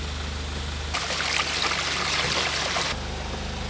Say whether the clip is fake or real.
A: real